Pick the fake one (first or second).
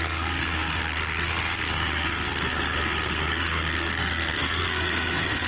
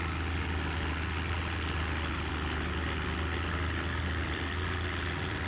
first